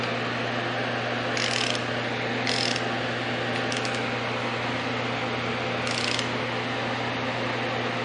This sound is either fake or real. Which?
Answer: real